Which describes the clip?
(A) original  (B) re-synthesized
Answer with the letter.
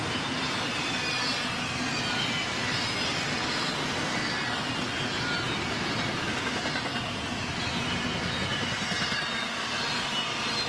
A